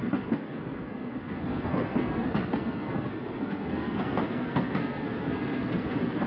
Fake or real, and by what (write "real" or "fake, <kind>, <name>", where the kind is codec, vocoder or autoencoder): fake, codec, SNAC